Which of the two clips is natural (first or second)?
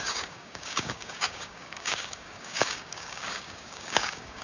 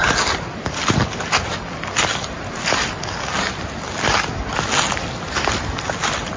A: second